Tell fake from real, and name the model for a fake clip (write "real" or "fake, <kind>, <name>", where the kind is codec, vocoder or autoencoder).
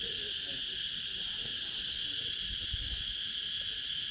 real